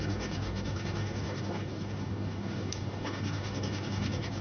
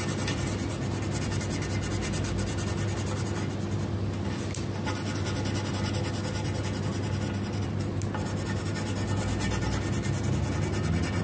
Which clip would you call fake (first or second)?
first